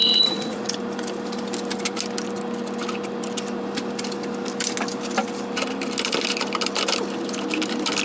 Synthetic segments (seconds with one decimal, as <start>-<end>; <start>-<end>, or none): 0.0-0.7